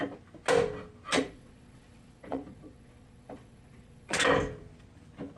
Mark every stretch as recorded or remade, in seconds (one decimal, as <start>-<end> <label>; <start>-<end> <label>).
0.0-1.1 recorded; 1.1-4.2 remade; 4.2-5.4 recorded